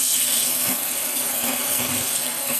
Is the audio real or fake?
fake